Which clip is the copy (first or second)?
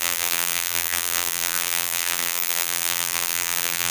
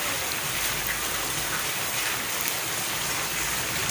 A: first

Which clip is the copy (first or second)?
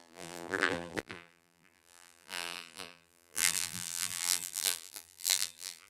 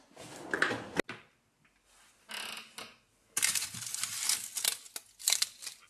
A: first